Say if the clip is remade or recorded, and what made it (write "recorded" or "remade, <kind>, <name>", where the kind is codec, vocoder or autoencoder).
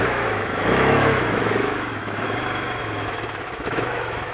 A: remade, autoencoder, DAC-VAE